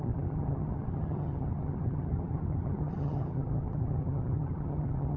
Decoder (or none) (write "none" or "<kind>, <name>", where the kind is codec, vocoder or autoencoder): vocoder, HiFi-GAN